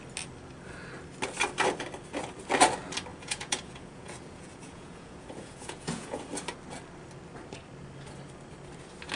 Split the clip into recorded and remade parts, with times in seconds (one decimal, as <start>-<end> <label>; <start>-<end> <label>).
0.0-3.1 recorded; 3.1-6.2 remade; 6.2-9.2 recorded